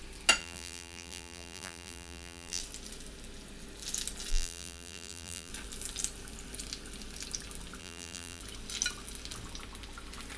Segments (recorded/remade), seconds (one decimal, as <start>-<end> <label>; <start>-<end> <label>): 0.0-0.4 recorded; 0.4-2.6 remade; 2.6-4.3 recorded; 4.3-5.5 remade; 5.5-7.8 recorded; 7.8-8.4 remade; 8.4-10.4 recorded